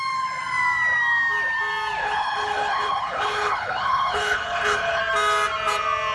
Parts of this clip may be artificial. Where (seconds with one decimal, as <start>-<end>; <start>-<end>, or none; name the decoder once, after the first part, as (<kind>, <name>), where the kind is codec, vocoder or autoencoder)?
2.0-5.0 (codec, HILCodec)